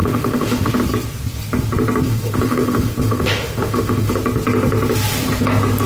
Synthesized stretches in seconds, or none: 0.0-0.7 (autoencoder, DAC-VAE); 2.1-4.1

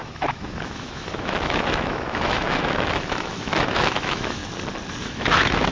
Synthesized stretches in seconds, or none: 0.0-4.4 (autoencoder, DAC-VAE); 5.0-5.7